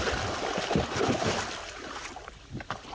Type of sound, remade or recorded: recorded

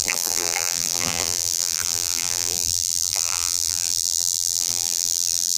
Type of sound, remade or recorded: remade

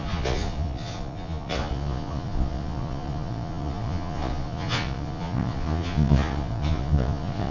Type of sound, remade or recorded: remade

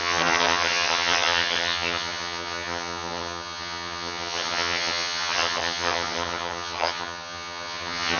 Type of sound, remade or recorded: remade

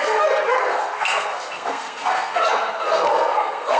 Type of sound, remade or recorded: remade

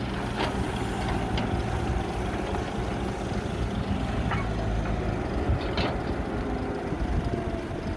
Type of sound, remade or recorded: recorded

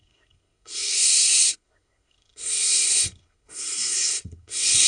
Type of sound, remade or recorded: remade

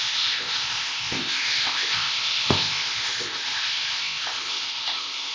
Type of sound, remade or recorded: remade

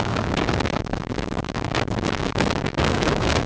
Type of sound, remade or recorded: remade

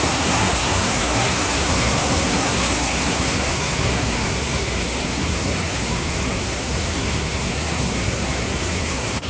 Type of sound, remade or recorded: remade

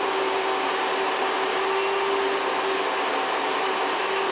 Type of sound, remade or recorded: recorded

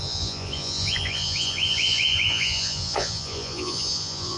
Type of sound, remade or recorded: remade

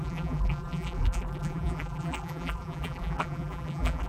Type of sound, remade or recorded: remade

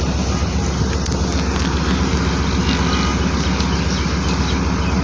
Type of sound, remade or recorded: recorded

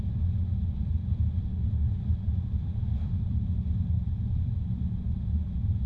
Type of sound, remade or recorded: remade